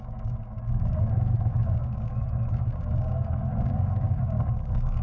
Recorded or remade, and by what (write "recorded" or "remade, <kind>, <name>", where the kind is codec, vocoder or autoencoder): remade, codec, DAC